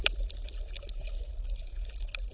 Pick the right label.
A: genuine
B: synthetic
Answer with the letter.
A